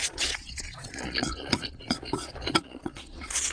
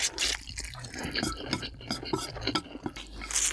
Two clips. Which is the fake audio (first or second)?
first